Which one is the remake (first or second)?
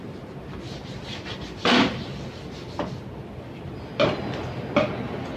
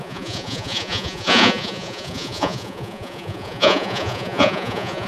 second